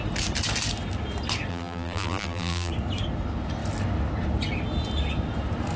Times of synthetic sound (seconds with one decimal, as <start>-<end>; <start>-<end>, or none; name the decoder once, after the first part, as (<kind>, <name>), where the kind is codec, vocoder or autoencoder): 1.5-2.7 (vocoder, BigVGAN v2)